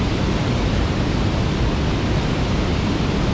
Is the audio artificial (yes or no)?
no